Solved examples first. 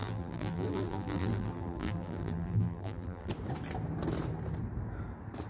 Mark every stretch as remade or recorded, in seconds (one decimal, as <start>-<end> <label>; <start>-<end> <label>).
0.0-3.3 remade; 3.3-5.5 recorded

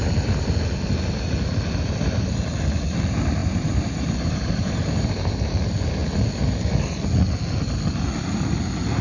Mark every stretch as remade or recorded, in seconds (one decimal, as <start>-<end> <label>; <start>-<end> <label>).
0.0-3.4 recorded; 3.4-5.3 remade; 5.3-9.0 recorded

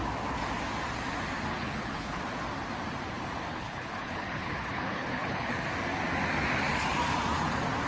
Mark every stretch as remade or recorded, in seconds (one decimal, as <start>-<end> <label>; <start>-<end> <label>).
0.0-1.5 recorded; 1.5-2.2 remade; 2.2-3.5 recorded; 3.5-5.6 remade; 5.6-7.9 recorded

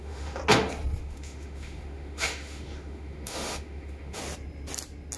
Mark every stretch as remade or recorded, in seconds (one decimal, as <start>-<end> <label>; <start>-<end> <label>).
0.0-0.4 remade; 0.4-1.0 recorded; 1.0-4.2 remade; 4.2-5.2 recorded